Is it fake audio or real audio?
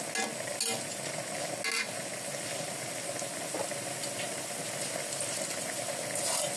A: real